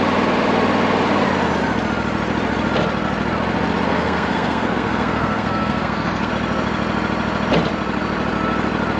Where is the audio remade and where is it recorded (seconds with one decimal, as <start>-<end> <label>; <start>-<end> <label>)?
0.0-3.9 recorded; 3.9-6.3 remade; 6.3-9.0 recorded